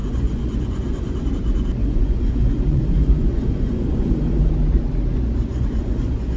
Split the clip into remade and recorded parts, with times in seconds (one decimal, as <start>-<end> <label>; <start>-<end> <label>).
0.0-1.3 remade; 1.3-1.8 recorded; 1.8-4.5 remade; 4.5-5.5 recorded; 5.5-6.4 remade